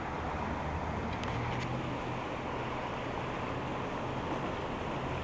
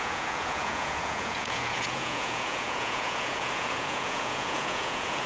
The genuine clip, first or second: first